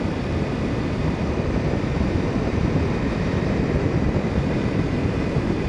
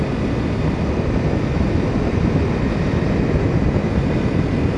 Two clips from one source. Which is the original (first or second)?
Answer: second